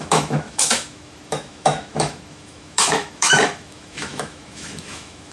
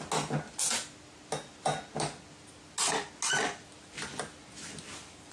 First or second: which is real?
second